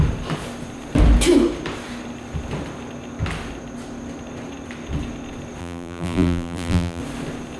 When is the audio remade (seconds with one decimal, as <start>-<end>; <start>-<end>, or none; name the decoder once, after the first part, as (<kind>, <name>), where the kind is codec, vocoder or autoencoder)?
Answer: 5.6-7.0 (vocoder, BigVGAN v2)